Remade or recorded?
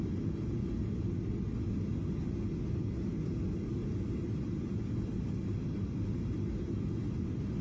recorded